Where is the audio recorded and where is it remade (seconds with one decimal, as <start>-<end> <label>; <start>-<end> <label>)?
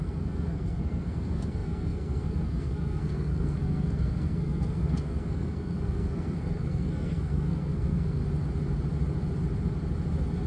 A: 0.0-8.2 remade; 8.2-10.5 recorded